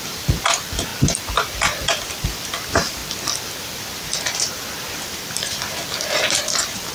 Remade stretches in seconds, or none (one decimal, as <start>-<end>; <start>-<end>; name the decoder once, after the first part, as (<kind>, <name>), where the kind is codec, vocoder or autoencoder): 0.0-0.9 (vocoder, BigVGAN v2); 2.0-3.0; 4.8-6.9